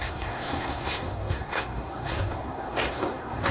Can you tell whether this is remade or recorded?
remade